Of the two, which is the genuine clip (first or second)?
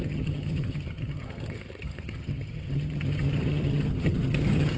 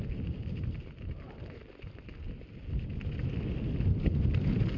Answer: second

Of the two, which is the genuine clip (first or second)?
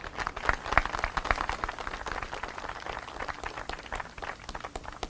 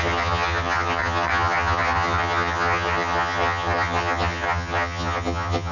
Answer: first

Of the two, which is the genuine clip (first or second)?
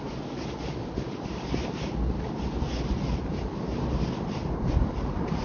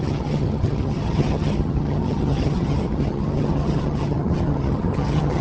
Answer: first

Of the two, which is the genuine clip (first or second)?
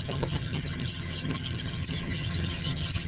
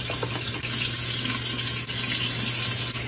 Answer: second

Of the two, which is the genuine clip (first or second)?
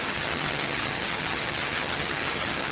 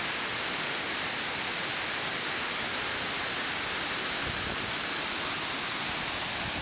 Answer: second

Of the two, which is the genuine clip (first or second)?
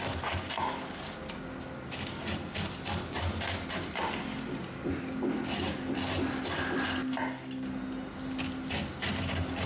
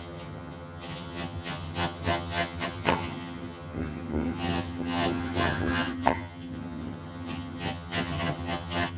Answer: first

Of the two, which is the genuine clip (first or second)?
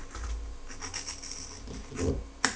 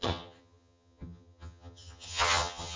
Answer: first